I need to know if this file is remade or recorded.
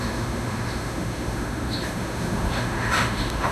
remade